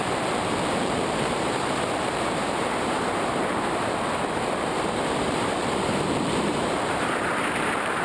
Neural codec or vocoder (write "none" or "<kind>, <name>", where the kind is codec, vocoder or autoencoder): vocoder, BigVGAN v2